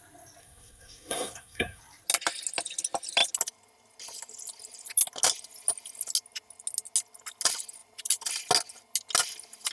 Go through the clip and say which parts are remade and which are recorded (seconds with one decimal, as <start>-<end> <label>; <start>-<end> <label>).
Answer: 0.0-0.4 recorded; 0.4-1.8 remade; 1.8-9.7 recorded